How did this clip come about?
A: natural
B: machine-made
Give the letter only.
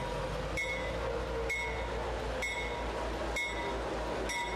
A